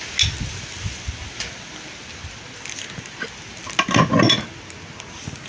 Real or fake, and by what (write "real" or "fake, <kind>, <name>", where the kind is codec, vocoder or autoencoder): real